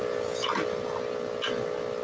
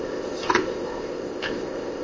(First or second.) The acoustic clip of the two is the first